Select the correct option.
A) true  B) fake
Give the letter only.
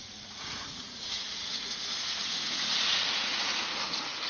B